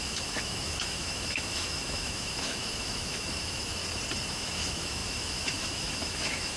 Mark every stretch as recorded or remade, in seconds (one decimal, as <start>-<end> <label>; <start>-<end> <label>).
0.0-3.8 remade; 3.8-4.3 recorded; 4.3-6.6 remade